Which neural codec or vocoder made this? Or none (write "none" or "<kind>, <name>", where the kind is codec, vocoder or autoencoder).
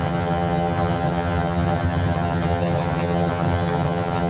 vocoder, HiFi-GAN